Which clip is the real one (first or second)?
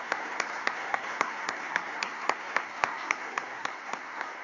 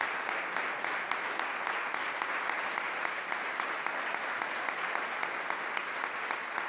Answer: second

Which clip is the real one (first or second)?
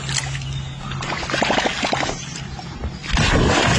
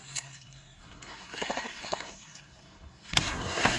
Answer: first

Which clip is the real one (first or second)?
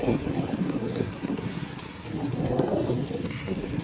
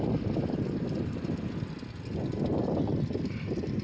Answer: second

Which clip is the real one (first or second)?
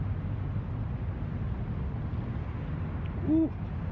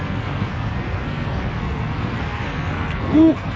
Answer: first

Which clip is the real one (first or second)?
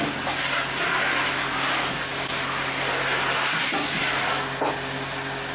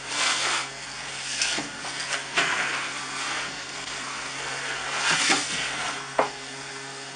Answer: first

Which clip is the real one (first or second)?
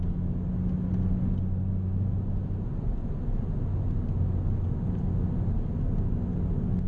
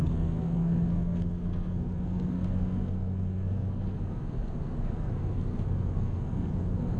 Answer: first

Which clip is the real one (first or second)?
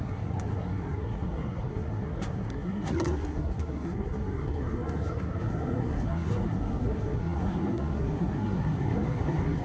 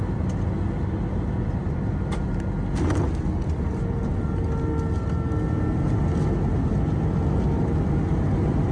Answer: second